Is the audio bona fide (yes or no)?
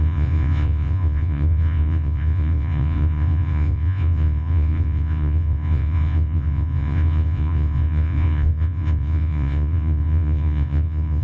no